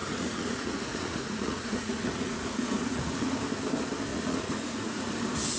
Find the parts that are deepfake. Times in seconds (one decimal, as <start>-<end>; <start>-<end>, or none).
0.0-3.4; 4.1-5.1